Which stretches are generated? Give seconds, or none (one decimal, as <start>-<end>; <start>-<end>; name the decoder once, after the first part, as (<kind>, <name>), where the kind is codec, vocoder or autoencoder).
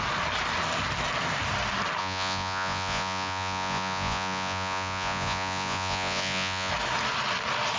2.0-6.7 (vocoder, Vocos)